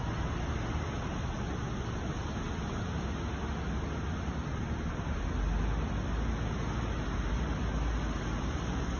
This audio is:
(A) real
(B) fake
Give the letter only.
A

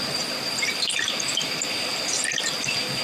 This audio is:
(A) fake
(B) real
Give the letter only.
A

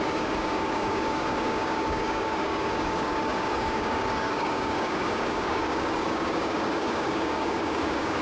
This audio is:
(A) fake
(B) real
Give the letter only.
A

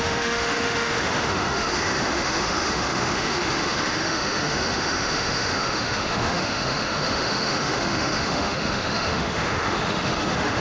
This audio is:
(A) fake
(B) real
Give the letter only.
A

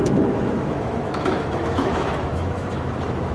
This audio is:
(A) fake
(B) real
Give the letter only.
A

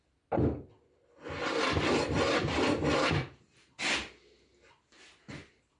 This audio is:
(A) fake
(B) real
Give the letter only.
B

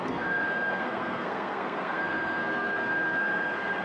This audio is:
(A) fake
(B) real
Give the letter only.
A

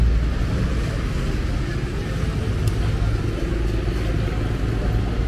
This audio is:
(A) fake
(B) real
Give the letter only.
B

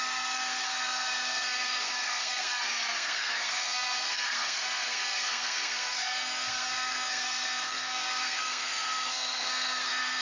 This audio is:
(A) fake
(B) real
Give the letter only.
A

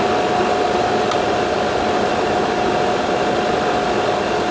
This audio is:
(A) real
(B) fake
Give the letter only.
A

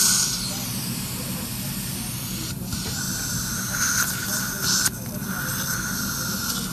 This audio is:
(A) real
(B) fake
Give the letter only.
A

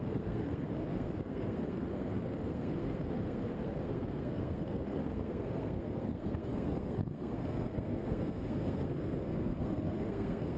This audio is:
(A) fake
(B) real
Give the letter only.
A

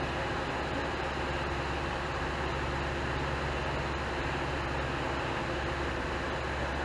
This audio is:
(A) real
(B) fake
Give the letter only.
A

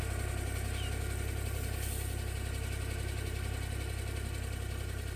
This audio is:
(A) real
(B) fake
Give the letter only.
A